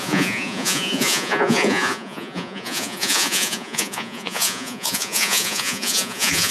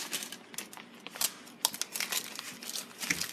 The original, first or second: second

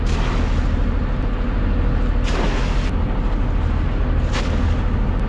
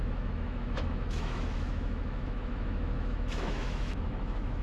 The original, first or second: first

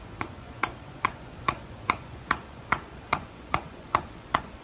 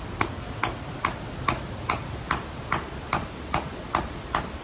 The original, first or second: second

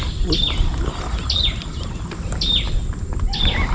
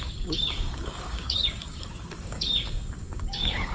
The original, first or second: first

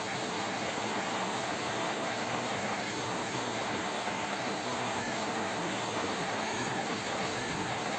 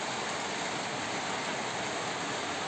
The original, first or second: second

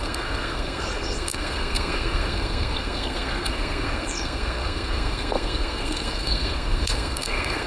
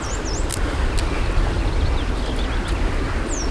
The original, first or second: second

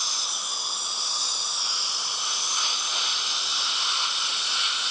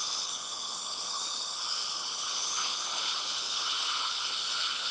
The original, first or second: first